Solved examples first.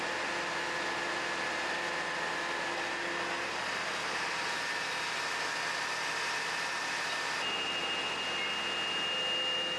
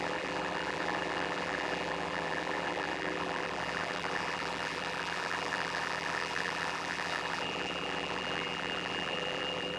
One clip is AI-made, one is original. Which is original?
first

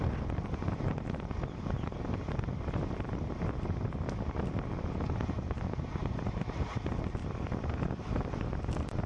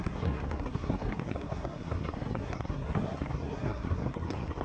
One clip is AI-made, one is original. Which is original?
first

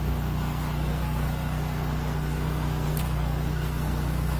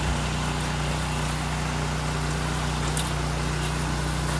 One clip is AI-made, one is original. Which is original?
second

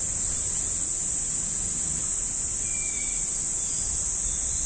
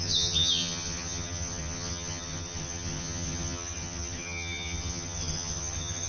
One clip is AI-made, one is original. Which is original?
first